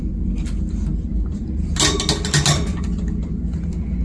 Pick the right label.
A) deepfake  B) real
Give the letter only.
B